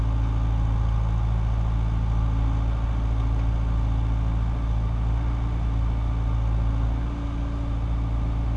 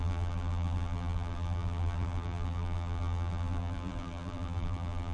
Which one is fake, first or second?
second